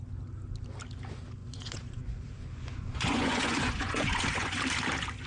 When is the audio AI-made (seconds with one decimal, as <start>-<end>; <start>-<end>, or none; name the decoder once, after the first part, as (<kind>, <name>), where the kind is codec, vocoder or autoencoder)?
1.4-4.6 (vocoder, Vocos)